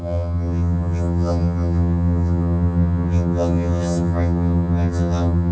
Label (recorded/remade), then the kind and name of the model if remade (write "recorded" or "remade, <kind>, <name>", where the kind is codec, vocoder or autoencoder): remade, vocoder, HiFi-GAN